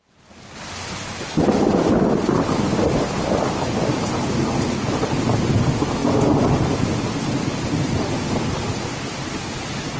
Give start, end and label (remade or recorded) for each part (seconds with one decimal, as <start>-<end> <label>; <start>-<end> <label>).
0.0-10.0 recorded